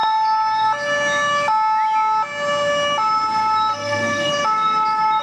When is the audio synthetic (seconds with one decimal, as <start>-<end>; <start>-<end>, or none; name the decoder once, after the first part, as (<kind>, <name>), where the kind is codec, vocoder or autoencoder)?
3.7-4.3 (codec, SNAC)

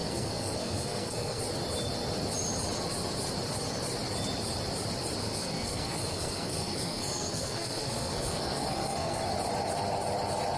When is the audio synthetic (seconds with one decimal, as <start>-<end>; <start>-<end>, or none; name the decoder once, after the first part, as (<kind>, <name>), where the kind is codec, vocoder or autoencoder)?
0.0-1.4 (codec, SNAC); 5.2-9.2

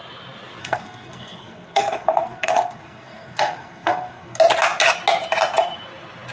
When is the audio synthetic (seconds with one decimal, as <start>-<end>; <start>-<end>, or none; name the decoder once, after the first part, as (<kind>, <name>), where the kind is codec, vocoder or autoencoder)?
0.6-4.4 (codec, SNAC)